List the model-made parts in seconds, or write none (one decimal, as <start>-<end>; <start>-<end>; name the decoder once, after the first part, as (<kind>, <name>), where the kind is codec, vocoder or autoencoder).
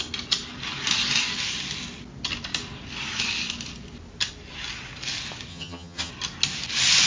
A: 5.5-6.1 (vocoder, HiFi-GAN)